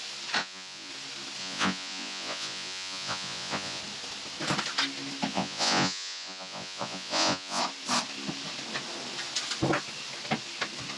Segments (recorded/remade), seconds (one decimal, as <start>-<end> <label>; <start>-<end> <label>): 0.0-0.4 recorded; 0.4-0.9 remade; 0.9-1.4 recorded; 1.4-3.8 remade; 3.8-5.3 recorded; 5.3-7.6 remade; 7.6-11.0 recorded